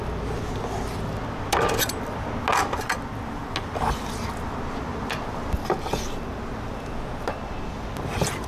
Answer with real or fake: real